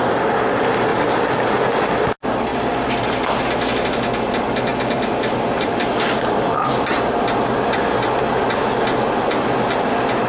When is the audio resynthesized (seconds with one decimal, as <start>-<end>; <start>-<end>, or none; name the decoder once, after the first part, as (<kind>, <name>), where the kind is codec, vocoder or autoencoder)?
0.9-1.4 (vocoder, BigVGAN v2); 2.5-3.4; 4.7-7.8